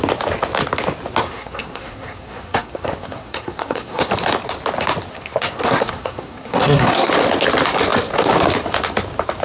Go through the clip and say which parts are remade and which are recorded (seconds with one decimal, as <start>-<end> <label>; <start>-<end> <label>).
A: 0.0-1.2 recorded; 1.2-4.1 remade; 4.1-5.1 recorded; 5.1-7.1 remade; 7.1-9.4 recorded